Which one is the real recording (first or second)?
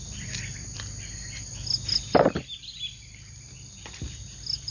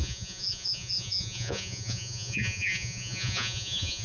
first